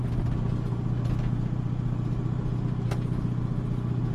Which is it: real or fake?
real